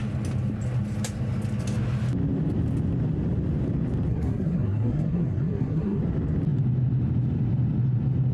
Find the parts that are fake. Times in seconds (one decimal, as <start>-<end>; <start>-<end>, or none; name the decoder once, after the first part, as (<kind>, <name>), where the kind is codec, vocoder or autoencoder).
4.1-6.0 (codec, SNAC)